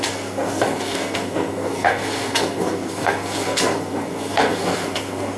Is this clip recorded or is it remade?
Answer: remade